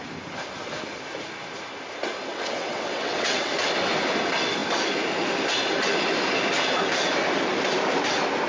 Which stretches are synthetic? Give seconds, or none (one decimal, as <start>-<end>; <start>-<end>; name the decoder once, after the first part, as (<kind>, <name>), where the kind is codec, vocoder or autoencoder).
2.3-3.5 (vocoder, WaveNeXt)

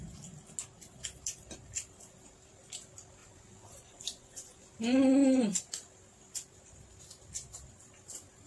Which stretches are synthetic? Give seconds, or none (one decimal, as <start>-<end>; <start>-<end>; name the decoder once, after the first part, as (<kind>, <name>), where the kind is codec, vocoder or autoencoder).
3.2-4.7 (vocoder, Vocos)

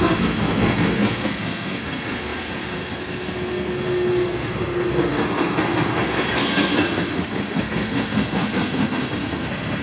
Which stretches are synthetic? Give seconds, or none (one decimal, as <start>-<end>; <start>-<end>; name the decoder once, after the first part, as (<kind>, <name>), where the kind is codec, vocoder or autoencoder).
0.0-9.8 (codec, SNAC)

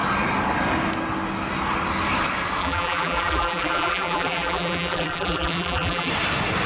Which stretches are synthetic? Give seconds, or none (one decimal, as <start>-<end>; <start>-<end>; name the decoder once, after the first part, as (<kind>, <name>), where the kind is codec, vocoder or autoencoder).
2.6-6.1 (vocoder, BigVGAN v2)

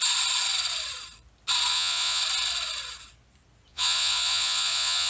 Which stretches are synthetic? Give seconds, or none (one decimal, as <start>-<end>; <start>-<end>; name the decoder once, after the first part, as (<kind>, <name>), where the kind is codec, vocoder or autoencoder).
1.7-2.2 (vocoder, Vocos); 3.7-5.1

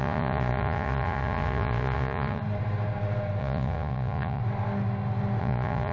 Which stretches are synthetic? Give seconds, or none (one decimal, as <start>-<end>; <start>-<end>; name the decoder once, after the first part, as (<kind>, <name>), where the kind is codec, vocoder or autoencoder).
0.0-2.4 (vocoder, Vocos); 3.4-4.4; 5.4-5.9

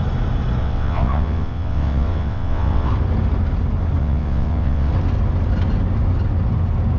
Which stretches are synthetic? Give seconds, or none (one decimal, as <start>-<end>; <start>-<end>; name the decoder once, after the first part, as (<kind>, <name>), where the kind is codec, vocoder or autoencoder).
0.6-2.9 (vocoder, WaveNeXt); 4.0-4.9

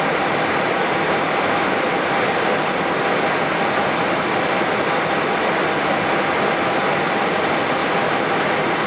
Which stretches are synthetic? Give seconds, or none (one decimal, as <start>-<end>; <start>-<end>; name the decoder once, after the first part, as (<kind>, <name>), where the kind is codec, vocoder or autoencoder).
0.0-8.9 (vocoder, BigVGAN v2)